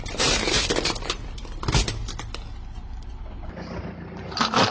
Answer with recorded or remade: recorded